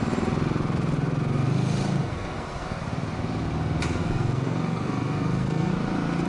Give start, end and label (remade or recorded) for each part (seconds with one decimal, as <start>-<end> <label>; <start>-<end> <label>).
0.0-2.0 recorded; 2.0-2.8 remade; 2.8-4.0 recorded; 4.0-5.7 remade; 5.7-6.3 recorded